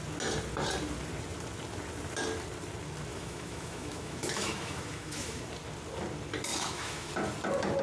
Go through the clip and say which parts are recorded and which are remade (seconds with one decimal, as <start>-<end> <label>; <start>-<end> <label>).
0.0-3.1 recorded; 3.1-5.4 remade; 5.4-6.5 recorded; 6.5-7.1 remade; 7.1-7.8 recorded